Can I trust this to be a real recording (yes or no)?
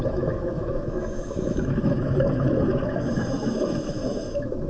no